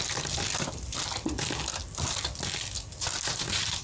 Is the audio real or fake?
real